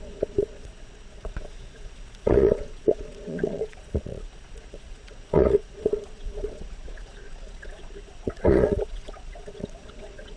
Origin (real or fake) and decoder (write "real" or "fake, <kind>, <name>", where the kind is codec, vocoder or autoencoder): fake, vocoder, Vocos